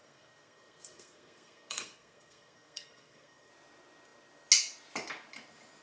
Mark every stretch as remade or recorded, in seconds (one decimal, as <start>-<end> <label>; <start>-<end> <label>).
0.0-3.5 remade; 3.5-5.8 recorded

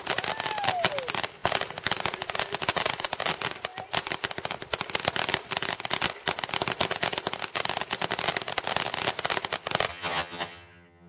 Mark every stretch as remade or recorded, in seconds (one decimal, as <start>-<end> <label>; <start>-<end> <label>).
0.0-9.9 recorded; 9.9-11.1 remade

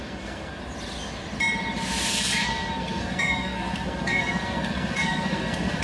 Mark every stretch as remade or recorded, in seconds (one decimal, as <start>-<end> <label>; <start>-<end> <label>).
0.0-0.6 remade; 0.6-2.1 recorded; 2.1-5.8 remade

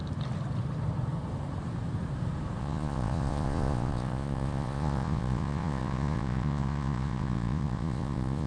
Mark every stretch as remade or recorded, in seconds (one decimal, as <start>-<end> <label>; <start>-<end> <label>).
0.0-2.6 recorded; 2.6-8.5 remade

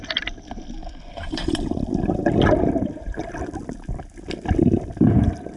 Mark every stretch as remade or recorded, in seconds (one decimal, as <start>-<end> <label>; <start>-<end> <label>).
0.0-5.6 recorded

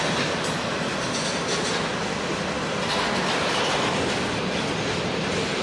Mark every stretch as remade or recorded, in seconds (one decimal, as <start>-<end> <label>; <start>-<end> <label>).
0.0-5.6 recorded